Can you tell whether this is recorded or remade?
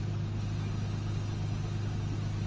recorded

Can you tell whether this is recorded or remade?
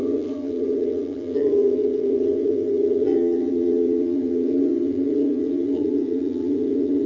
remade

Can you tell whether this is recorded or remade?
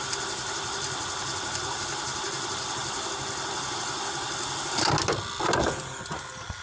recorded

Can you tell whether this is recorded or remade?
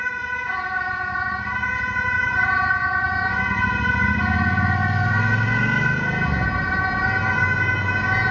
recorded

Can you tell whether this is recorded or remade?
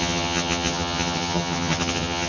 remade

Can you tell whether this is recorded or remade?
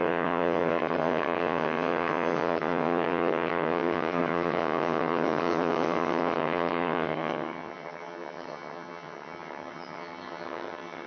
remade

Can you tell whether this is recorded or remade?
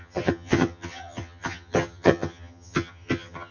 remade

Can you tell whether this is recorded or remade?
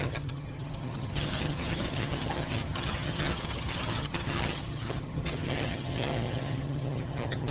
remade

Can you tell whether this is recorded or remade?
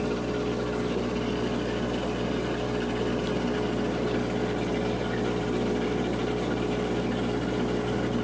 recorded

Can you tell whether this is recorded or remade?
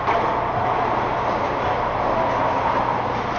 recorded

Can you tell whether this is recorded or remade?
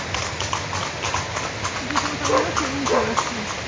recorded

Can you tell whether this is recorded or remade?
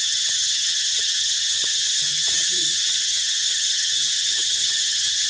remade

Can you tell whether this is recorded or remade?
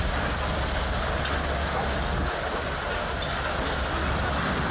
recorded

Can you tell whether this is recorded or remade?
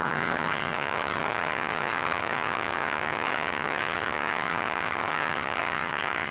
remade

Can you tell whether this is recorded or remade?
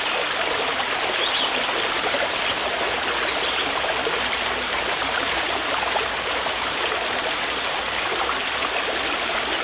recorded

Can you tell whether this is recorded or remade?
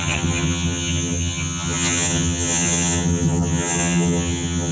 remade